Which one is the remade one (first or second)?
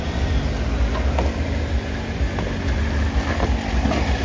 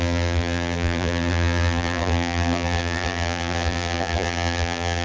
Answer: second